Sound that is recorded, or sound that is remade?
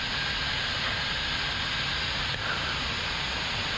recorded